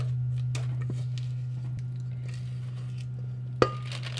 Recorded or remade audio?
recorded